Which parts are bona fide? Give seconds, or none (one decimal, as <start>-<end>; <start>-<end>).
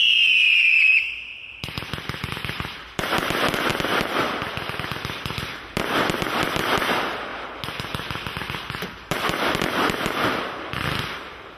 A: 0.0-1.4; 2.3-11.6